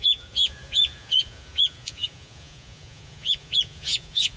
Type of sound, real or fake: fake